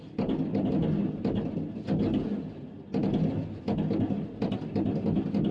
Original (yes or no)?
yes